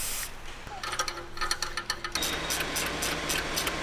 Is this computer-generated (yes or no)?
no